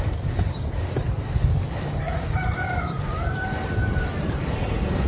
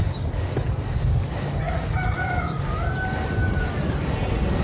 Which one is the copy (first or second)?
first